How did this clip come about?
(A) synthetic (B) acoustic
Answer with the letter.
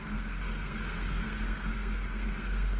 A